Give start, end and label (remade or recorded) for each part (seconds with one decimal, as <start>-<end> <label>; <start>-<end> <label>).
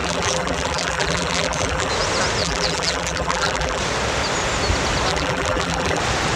0.0-1.9 remade; 1.9-2.4 recorded; 2.4-3.8 remade; 3.8-5.1 recorded; 5.1-6.0 remade; 6.0-6.4 recorded